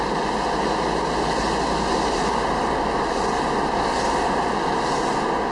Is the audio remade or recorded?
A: recorded